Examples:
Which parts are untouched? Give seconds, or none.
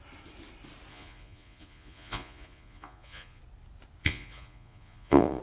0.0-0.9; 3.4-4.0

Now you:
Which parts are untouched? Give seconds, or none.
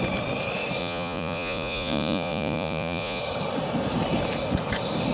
0.0-0.8; 3.2-5.1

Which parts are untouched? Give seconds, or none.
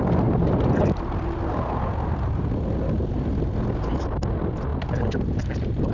0.0-5.9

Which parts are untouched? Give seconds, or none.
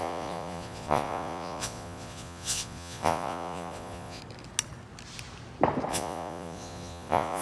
4.2-5.9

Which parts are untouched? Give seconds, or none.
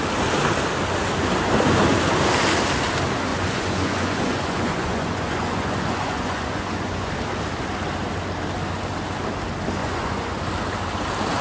0.0-3.3; 7.1-9.8; 10.4-11.4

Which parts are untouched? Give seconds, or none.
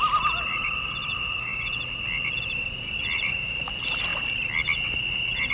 0.0-5.5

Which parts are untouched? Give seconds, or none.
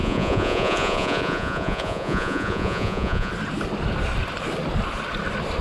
3.3-5.6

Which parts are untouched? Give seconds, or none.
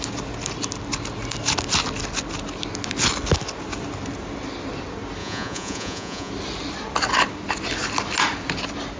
0.0-5.2; 6.3-9.0